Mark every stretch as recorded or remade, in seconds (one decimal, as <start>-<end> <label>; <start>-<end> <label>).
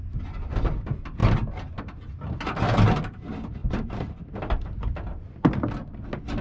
0.0-6.4 recorded